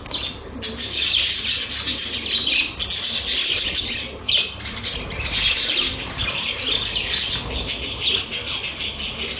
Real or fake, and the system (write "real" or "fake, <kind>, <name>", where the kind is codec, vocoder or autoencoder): real